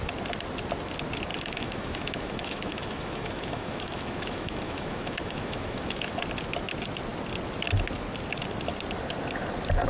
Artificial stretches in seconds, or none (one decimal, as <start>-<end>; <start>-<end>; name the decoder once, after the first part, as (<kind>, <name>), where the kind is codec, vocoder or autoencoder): 1.3-6.2 (autoencoder, DAC-VAE)